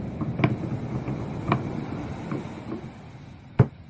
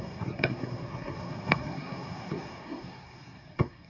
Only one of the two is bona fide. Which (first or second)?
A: first